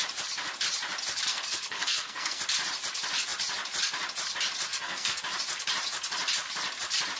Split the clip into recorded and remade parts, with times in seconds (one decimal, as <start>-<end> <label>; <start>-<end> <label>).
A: 0.0-1.3 recorded; 1.3-2.4 remade; 2.4-4.7 recorded; 4.7-5.2 remade; 5.2-7.2 recorded